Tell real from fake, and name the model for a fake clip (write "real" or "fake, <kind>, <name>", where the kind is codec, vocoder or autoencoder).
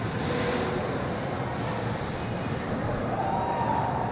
real